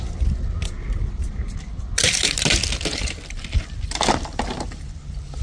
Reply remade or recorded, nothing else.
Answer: recorded